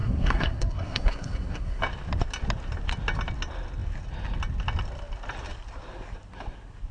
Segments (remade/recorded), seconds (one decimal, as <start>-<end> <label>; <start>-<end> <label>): 0.0-1.8 remade; 1.8-6.9 recorded